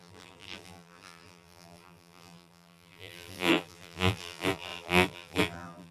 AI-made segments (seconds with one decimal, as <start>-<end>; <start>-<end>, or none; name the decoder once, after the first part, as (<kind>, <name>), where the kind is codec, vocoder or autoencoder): 0.0-5.9 (vocoder, BigVGAN v2)